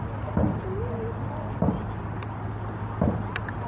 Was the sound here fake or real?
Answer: real